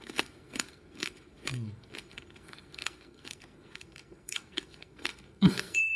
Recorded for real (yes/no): no